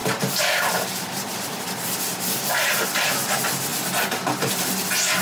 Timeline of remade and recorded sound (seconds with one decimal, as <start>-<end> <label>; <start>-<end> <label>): 0.0-3.1 remade; 3.1-5.2 recorded